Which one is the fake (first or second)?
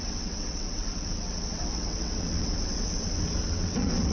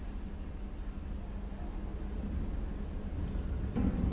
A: first